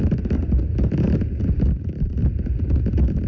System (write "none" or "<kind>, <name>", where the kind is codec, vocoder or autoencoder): none